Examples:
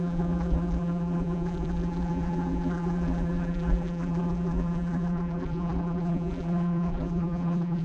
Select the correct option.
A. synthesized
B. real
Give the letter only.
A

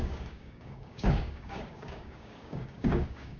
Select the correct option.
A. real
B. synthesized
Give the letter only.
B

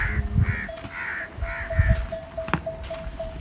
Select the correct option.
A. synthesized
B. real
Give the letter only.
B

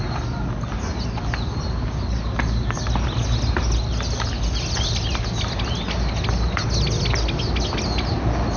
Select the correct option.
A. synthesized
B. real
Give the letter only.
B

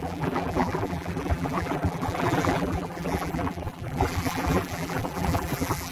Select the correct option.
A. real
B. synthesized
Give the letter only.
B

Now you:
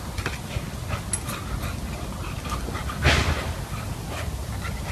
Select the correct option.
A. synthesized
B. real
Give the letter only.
B